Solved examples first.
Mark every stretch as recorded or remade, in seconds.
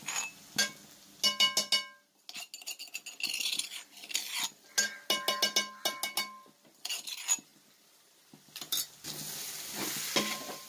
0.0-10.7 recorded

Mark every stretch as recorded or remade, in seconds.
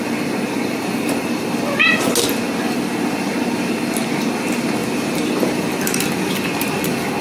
0.0-0.9 recorded; 0.9-1.6 remade; 1.6-4.8 recorded; 4.8-6.3 remade; 6.3-7.2 recorded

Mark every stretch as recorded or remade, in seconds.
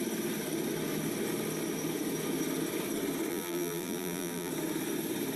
0.0-3.3 recorded; 3.3-4.5 remade; 4.5-5.4 recorded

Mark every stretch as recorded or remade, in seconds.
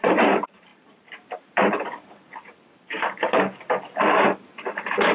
0.0-5.1 remade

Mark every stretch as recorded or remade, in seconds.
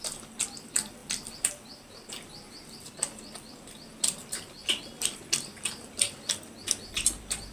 0.0-4.6 recorded; 4.6-6.3 remade; 6.3-7.5 recorded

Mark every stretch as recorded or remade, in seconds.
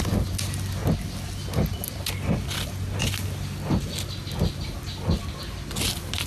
0.0-6.3 recorded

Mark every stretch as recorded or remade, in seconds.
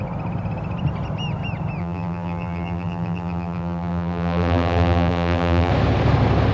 0.0-1.8 recorded; 1.8-5.7 remade; 5.7-6.5 recorded